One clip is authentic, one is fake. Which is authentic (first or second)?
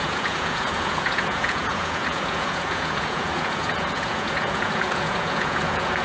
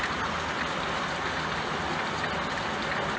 second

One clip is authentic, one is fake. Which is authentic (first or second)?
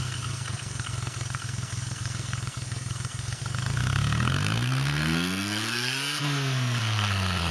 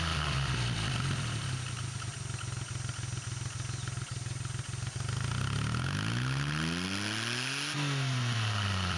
second